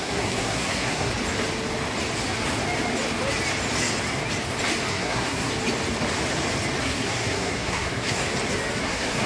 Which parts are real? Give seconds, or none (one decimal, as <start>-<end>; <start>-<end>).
1.1-4.9; 5.5-6.8; 8.2-8.8